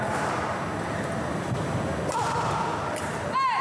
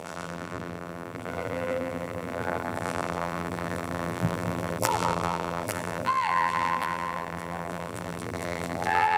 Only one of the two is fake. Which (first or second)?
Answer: second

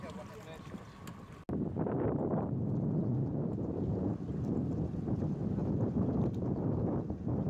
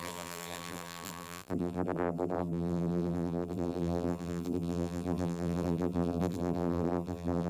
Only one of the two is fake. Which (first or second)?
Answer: second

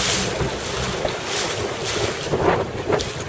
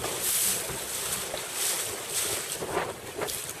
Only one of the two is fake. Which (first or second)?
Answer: second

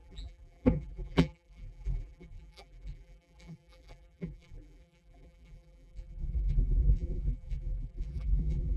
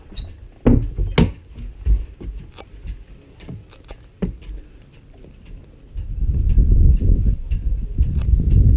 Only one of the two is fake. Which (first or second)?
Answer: first